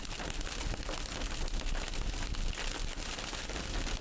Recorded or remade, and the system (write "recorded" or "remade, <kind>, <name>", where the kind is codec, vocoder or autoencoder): recorded